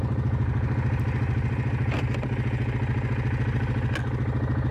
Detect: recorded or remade recorded